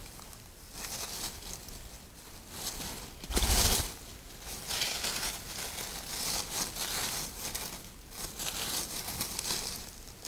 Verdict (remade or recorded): recorded